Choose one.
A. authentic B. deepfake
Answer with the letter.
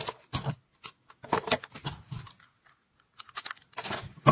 A